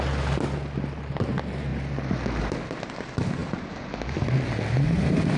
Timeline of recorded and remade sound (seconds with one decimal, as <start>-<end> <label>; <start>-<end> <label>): 0.0-5.4 recorded